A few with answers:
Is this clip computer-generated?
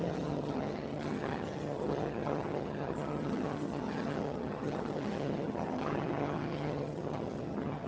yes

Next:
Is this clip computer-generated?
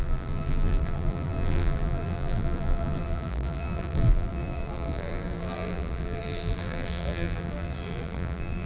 yes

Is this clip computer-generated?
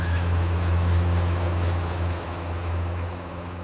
yes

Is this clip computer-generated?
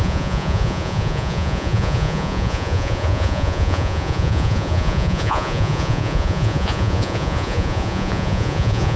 yes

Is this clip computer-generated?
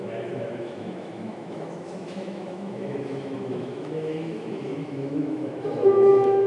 yes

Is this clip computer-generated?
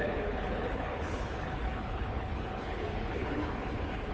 yes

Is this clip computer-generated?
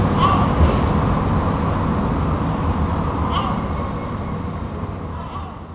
no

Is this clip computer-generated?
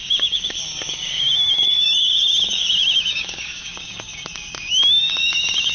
yes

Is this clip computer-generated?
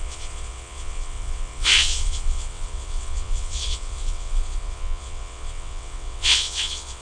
yes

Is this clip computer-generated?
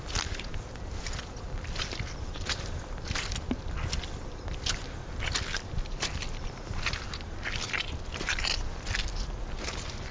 no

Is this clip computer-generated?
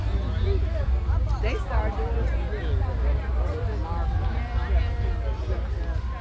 no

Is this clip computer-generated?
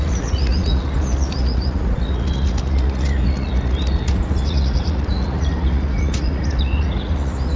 yes